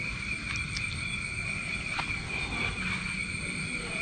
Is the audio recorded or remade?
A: recorded